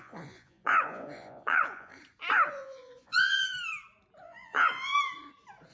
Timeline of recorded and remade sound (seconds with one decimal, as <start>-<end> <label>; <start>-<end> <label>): 0.0-1.9 remade; 1.9-2.5 recorded; 2.5-3.5 remade; 3.5-4.2 recorded; 4.2-4.9 remade; 4.9-5.7 recorded